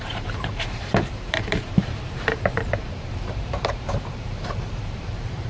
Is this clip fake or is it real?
fake